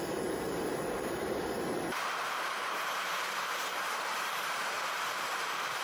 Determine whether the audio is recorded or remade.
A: remade